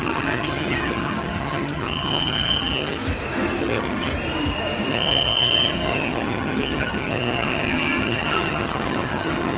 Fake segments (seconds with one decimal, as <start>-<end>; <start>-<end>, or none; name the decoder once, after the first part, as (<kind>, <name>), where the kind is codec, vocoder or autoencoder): 0.0-3.0 (vocoder, HiFi-GAN); 3.6-4.1; 4.9-9.6